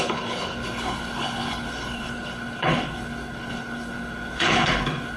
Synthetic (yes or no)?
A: yes